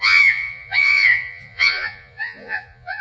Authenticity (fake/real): fake